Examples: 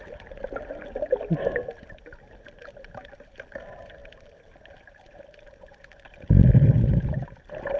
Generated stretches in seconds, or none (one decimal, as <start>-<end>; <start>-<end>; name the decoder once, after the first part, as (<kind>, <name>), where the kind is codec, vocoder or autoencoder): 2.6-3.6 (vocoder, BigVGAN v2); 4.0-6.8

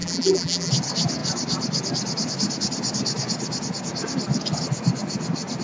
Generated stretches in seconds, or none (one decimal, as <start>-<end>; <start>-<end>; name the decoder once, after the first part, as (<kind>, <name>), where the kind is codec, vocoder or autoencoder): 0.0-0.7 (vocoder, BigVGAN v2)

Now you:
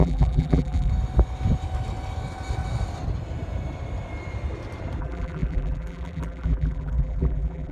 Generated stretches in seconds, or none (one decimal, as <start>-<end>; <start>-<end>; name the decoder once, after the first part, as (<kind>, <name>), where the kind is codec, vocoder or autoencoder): 0.0-0.9 (vocoder, BigVGAN v2); 5.0-7.7

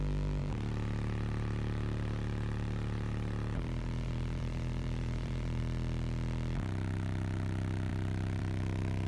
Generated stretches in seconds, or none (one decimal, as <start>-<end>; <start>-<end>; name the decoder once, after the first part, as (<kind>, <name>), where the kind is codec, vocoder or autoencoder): 0.4-5.6 (vocoder, BigVGAN v2)

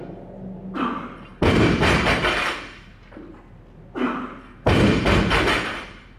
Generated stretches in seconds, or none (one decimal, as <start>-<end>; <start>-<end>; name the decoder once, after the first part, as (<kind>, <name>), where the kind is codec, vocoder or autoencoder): none